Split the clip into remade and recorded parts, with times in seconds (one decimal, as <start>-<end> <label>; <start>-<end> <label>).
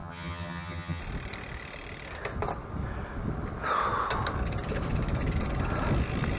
0.0-1.0 remade; 1.0-6.4 recorded